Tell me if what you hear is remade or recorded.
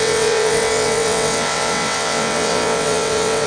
remade